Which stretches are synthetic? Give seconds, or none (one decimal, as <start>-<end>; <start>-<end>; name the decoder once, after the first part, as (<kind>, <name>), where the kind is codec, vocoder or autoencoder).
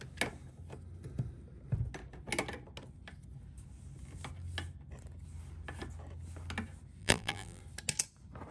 7.0-7.6 (vocoder, BigVGAN v2)